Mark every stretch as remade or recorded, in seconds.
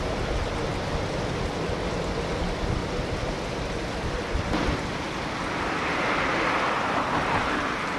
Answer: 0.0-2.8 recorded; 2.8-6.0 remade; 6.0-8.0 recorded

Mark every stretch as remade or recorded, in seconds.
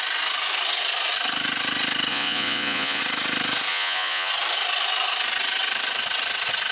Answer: 0.0-2.1 recorded; 2.1-3.0 remade; 3.0-3.7 recorded; 3.7-4.3 remade; 4.3-6.7 recorded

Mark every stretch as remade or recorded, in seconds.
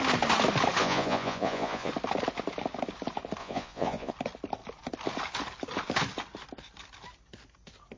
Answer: 0.0-0.8 recorded; 0.8-1.9 remade; 1.9-3.4 recorded; 3.4-4.1 remade; 4.1-8.0 recorded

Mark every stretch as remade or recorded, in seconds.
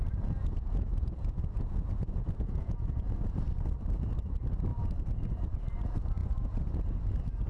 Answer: 0.0-3.4 remade; 3.4-6.2 recorded; 6.2-6.7 remade; 6.7-7.5 recorded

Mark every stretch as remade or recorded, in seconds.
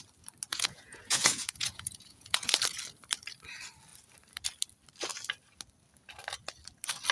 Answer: 0.0-0.5 recorded; 0.5-2.5 remade; 2.5-7.1 recorded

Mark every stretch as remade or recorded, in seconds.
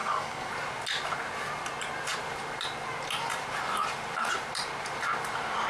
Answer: 0.0-0.5 remade; 0.5-5.7 recorded